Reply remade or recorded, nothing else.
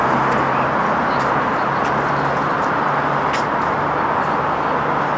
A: recorded